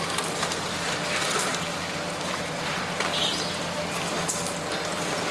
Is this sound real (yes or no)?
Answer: yes